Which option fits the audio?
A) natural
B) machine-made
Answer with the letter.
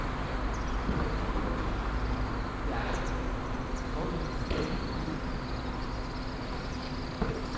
A